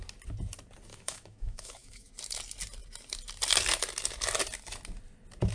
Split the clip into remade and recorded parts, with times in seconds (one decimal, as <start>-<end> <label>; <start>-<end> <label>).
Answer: 0.0-0.9 recorded; 0.9-2.1 remade; 2.1-5.5 recorded